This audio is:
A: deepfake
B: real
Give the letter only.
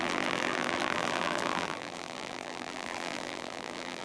A